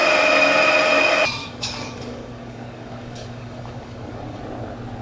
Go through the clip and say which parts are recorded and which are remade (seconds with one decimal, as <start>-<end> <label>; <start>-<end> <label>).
0.0-1.4 recorded; 1.4-4.4 remade; 4.4-5.0 recorded